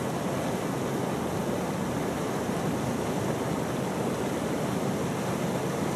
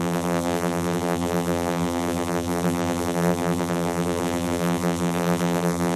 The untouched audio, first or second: first